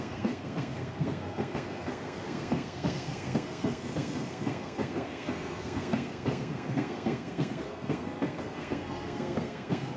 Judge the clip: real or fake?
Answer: fake